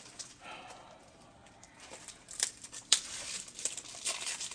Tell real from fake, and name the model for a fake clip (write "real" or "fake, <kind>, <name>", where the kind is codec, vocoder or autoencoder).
fake, vocoder, BigVGAN v2